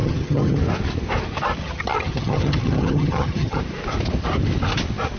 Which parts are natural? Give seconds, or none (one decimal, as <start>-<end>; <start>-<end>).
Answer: 0.6-1.6; 3.6-5.2